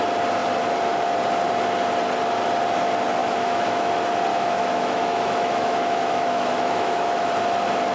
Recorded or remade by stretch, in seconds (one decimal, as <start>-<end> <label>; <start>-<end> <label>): 0.0-3.2 recorded; 3.2-3.9 remade; 3.9-4.3 recorded; 4.3-7.3 remade; 7.3-7.9 recorded